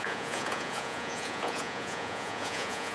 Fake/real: fake